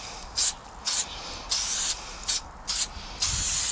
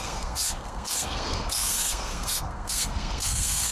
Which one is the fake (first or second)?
second